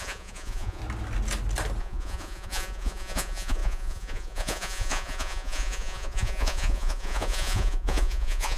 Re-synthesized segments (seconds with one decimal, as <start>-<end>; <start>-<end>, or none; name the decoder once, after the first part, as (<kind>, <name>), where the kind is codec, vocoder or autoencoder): 0.0-0.8 (vocoder, Vocos); 1.8-8.6

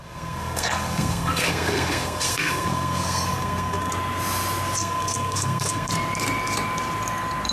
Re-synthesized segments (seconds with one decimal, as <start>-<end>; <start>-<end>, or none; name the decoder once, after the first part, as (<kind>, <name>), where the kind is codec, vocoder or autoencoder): 0.0-3.9 (codec, SNAC); 4.8-5.9

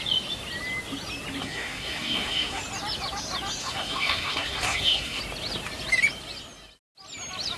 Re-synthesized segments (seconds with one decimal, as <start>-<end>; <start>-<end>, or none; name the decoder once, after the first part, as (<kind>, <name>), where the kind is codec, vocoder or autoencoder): 1.4-2.6 (codec, SNAC); 3.6-5.2

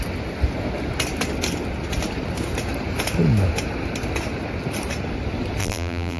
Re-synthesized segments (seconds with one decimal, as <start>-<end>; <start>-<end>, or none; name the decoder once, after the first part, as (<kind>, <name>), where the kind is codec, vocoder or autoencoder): 5.6-6.2 (vocoder, BigVGAN v2)

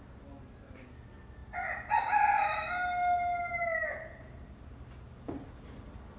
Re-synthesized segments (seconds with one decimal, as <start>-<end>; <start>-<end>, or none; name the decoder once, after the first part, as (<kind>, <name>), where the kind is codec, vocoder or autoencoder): none

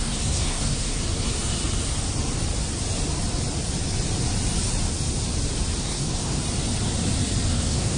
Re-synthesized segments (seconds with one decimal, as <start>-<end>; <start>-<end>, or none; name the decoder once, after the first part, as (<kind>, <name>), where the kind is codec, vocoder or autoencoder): 0.0-1.0 (codec, SNAC); 5.8-6.4; 7.5-8.0

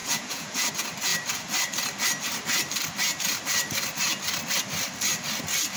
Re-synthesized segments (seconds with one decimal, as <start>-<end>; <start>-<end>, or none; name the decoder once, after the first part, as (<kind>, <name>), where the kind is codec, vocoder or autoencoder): 0.0-0.7 (vocoder, Vocos)

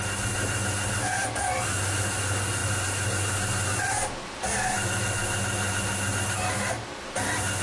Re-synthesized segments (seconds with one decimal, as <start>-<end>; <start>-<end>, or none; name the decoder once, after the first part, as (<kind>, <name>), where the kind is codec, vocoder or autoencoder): none